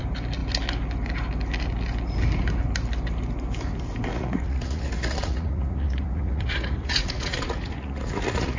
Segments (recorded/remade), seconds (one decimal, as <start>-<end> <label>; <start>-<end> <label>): 0.0-4.1 recorded; 4.1-8.6 remade